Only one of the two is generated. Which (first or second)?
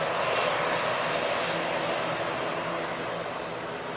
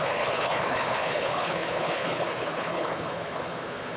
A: second